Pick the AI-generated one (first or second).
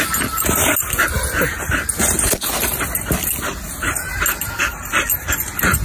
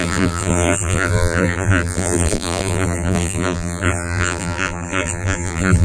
second